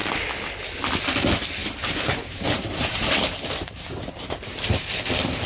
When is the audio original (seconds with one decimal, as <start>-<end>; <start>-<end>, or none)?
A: 0.0-1.6; 4.9-5.5